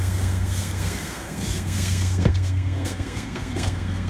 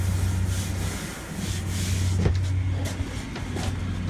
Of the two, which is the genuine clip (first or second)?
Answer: second